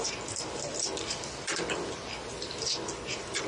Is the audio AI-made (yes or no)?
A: yes